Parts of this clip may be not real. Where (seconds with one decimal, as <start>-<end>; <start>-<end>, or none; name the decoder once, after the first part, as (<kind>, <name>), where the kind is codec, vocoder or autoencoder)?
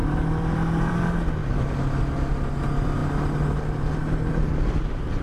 0.0-1.0 (vocoder, BigVGAN v2)